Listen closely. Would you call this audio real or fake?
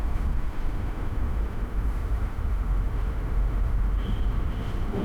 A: fake